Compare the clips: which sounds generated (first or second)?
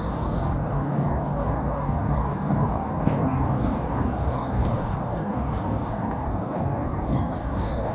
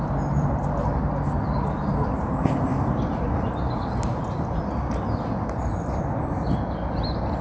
first